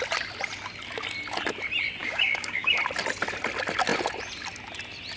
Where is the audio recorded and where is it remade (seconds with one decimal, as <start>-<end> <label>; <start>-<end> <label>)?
0.0-2.0 recorded; 2.0-2.8 remade; 2.8-5.2 recorded